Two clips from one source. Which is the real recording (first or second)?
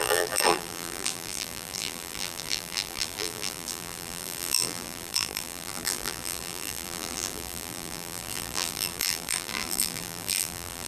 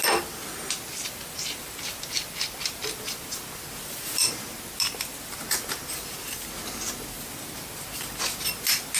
second